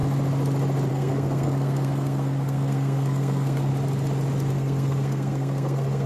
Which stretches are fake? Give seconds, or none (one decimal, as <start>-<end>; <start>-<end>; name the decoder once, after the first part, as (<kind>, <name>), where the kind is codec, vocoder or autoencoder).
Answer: 0.9-3.7 (codec, SNAC); 4.5-6.1